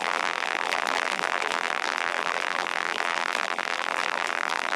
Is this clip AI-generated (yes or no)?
yes